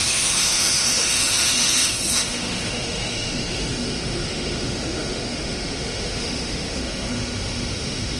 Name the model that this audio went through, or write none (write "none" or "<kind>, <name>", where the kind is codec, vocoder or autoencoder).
autoencoder, DAC-VAE